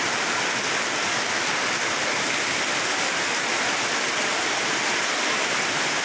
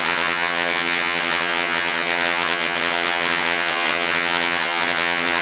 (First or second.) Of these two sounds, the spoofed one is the second